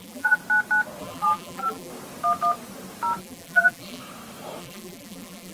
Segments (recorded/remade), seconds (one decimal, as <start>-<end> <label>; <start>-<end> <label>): 0.0-0.4 remade; 0.4-1.0 recorded; 1.0-1.9 remade; 1.9-3.2 recorded; 3.2-4.0 remade; 4.0-4.6 recorded; 4.6-5.5 remade